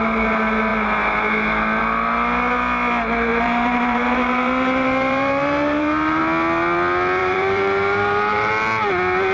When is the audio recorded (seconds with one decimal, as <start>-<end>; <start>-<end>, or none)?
0.0-3.3; 6.2-7.2; 8.5-9.3